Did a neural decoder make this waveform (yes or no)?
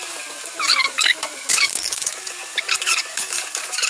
yes